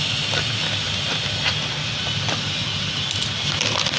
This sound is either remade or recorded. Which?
recorded